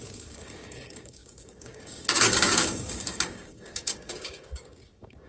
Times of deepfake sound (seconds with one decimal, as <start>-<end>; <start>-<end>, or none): 0.0-5.3